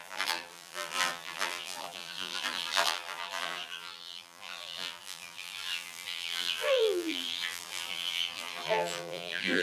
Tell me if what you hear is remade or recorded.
remade